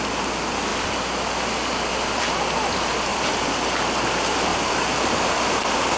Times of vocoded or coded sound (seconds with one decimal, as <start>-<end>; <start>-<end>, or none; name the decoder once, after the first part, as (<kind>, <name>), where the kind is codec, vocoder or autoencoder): 3.1-3.7 (vocoder, BigVGAN v2); 4.5-5.5

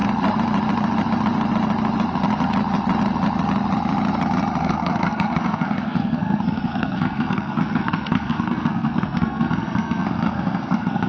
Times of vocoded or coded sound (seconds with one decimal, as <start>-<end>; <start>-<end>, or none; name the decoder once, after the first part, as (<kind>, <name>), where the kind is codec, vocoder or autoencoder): 4.6-11.1 (codec, SNAC)

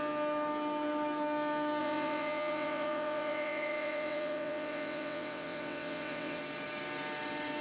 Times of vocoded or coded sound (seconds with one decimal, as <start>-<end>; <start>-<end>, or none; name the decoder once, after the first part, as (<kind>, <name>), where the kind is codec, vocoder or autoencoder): 1.8-6.4 (vocoder, WaveNeXt)

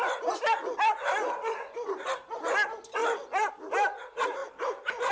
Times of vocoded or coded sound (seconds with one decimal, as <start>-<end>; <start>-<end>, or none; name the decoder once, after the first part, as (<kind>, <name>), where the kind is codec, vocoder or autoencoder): 4.4-5.1 (vocoder, BigVGAN v2)

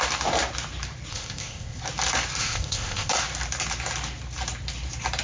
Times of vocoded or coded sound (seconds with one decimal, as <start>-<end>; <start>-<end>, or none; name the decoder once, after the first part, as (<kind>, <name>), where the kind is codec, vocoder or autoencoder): 1.1-1.8 (codec, ZipCodec); 2.4-3.1